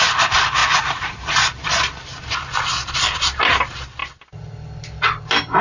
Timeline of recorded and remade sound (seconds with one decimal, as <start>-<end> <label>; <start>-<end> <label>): 0.0-0.6 recorded; 0.6-1.3 remade; 1.3-5.6 recorded